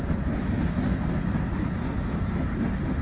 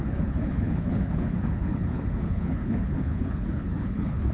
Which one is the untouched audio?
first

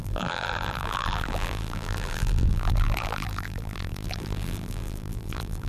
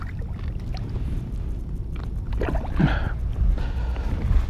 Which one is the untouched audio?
second